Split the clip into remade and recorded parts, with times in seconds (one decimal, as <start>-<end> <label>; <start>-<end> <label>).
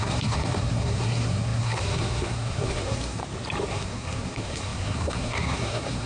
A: 0.0-3.2 remade; 3.2-3.7 recorded; 3.7-6.1 remade